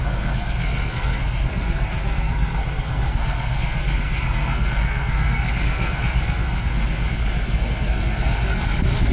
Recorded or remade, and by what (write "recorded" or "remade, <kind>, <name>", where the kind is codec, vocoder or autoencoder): remade, codec, SNAC